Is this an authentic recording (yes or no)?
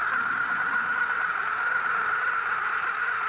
yes